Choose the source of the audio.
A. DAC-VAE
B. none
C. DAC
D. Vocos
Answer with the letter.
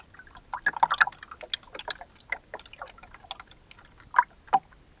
B